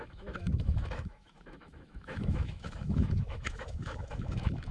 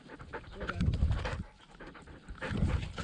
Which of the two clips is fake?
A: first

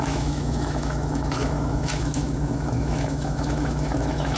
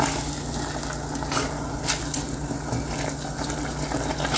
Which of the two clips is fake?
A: first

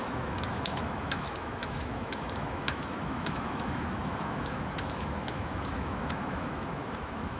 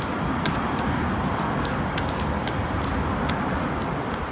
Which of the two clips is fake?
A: first